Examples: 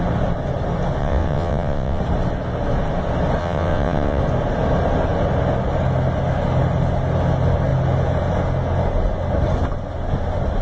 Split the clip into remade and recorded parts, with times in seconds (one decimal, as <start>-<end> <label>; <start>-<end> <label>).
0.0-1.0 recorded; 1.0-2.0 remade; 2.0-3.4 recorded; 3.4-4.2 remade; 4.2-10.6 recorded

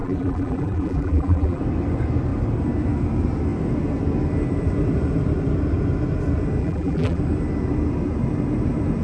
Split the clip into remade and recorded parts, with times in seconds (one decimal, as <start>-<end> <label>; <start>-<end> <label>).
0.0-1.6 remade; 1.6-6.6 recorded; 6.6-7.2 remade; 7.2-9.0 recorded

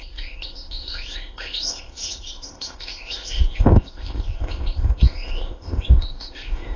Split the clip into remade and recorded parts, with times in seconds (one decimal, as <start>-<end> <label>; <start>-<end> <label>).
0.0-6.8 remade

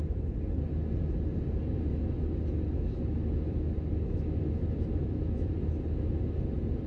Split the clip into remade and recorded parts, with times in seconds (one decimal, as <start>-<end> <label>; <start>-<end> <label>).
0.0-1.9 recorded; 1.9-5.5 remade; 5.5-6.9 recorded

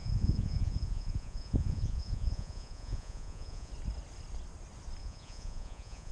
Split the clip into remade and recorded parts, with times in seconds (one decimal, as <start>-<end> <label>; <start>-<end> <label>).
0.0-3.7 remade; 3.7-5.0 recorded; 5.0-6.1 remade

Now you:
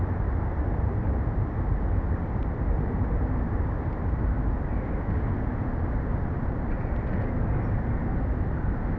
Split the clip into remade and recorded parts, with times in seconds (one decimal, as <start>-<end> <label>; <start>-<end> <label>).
0.0-2.4 recorded; 2.4-4.1 remade; 4.1-9.0 recorded